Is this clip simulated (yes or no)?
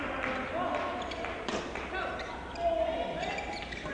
no